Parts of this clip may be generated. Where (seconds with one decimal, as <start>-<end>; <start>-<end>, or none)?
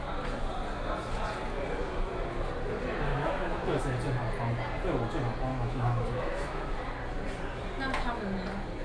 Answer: 3.1-3.8; 5.5-6.7